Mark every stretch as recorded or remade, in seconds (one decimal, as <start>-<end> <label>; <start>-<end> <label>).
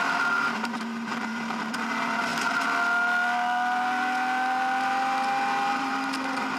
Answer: 0.0-2.3 remade; 2.3-5.7 recorded; 5.7-6.6 remade